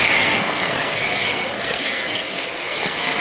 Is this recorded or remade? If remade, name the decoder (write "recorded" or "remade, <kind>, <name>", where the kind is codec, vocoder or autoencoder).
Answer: remade, codec, SNAC